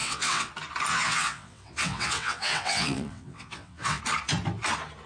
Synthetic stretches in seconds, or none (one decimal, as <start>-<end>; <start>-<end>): 0.0-0.5; 0.9-4.0